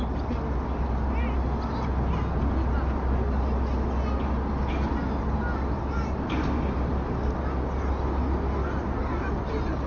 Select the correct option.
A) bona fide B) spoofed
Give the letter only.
A